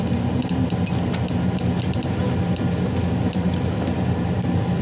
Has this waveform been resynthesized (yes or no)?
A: no